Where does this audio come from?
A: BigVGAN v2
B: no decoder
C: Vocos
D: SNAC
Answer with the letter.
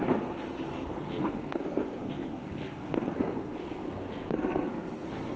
D